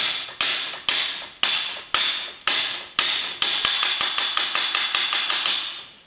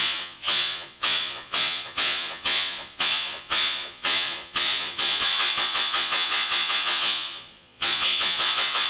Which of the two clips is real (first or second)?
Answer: first